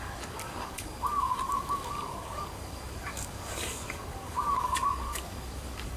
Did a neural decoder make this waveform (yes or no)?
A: yes